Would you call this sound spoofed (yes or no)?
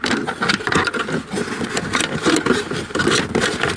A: no